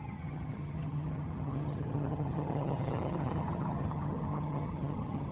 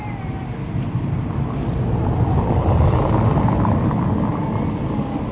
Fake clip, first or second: first